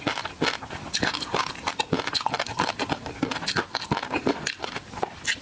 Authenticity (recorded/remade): recorded